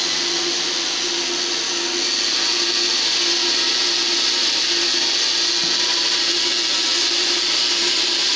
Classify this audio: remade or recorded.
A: recorded